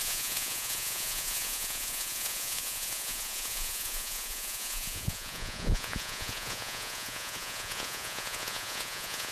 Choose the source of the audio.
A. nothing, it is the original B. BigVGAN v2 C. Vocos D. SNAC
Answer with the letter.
C